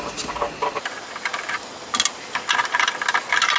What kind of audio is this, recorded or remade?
recorded